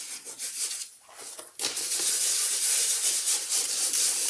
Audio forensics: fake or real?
real